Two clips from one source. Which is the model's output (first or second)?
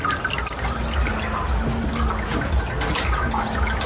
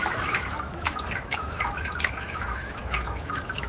second